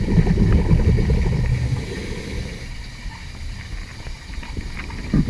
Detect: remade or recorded recorded